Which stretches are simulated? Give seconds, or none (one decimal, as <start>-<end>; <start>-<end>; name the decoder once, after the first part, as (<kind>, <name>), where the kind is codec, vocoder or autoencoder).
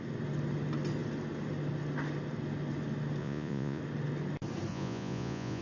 3.2-3.8 (vocoder, Vocos); 4.7-5.6